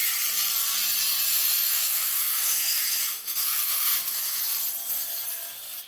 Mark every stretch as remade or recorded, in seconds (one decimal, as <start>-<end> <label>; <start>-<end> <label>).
0.0-1.3 recorded; 1.3-4.4 remade; 4.4-5.9 recorded

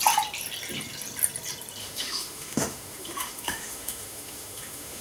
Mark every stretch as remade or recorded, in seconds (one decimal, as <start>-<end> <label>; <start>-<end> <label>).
0.0-1.8 recorded; 1.8-5.0 remade